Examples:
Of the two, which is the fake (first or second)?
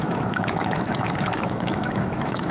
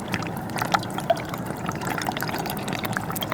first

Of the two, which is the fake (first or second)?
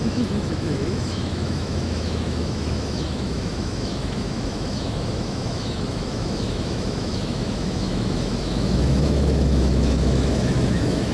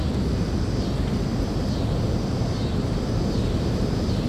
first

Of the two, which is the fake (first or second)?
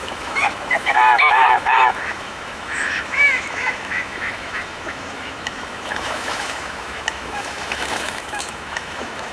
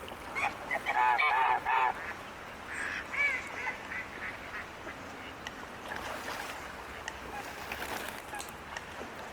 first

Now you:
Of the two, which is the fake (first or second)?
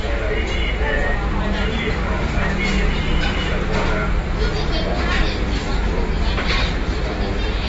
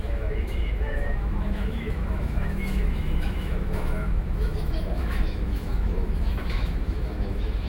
second